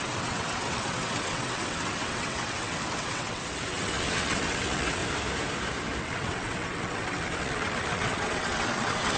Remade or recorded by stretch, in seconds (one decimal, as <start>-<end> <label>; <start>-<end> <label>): 0.0-5.0 remade; 5.0-6.0 recorded; 6.0-9.2 remade